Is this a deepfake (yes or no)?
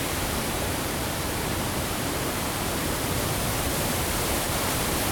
yes